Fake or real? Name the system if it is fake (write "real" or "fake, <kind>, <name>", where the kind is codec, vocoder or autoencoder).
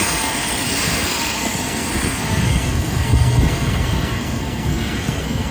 fake, codec, SNAC